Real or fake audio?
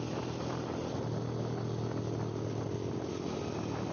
real